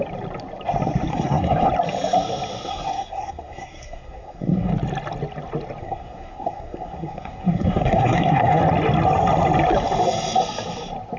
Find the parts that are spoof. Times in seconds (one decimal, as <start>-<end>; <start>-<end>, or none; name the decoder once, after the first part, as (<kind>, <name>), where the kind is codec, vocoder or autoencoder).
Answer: 1.1-1.7 (codec, SNAC); 2.7-4.7; 5.8-8.6